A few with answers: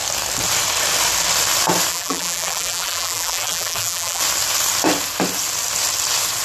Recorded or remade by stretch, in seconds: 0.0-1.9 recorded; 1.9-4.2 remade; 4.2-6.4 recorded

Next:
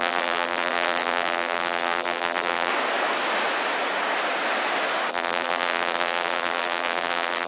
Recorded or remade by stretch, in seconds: 0.0-2.7 remade; 2.7-5.1 recorded; 5.1-7.5 remade